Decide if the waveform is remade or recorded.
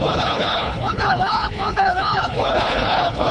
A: remade